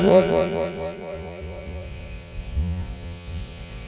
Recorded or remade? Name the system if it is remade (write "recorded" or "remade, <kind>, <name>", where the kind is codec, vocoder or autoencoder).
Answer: remade, vocoder, Vocos